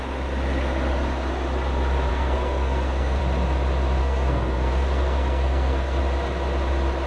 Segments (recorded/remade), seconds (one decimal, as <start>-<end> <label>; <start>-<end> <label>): 0.0-2.1 recorded; 2.1-3.2 remade; 3.2-4.0 recorded; 4.0-6.0 remade; 6.0-7.1 recorded